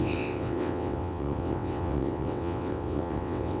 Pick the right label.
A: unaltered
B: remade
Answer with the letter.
B